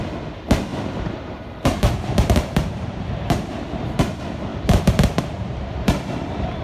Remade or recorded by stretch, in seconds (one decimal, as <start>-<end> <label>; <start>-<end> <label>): 0.0-0.7 recorded; 0.7-4.0 remade; 4.0-4.5 recorded; 4.5-6.6 remade

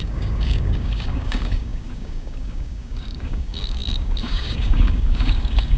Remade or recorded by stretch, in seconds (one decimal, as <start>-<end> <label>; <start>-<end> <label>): 0.0-5.8 remade

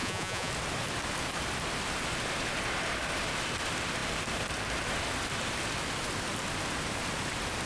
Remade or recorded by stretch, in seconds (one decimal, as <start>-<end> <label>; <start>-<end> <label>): 0.0-0.5 remade; 0.5-7.7 recorded